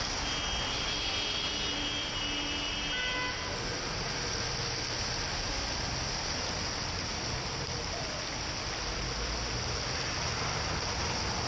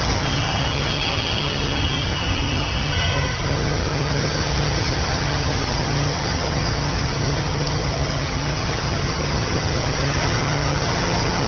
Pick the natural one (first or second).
first